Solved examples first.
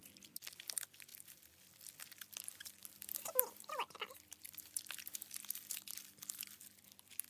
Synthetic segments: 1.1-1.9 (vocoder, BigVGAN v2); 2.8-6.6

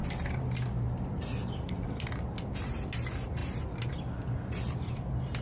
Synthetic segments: none

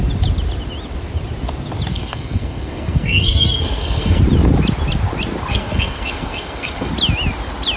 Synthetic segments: 1.9-4.2 (codec, SNAC); 5.5-6.9

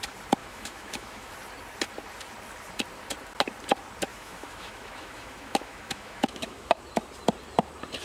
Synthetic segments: 0.4-1.3 (autoencoder, DAC-VAE); 4.1-6.8

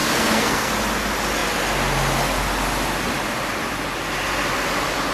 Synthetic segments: 0.0-0.7 (codec, SNAC)

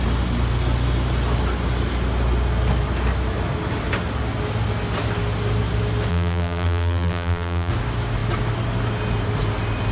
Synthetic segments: 6.1-7.7 (vocoder, BigVGAN v2)

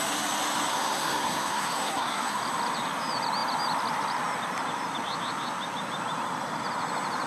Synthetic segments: 0.7-2.4 (codec, SNAC)

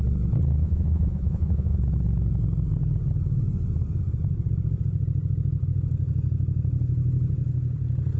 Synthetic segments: 0.6-1.8 (vocoder, Vocos)